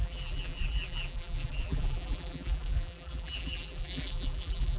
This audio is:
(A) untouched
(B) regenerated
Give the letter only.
B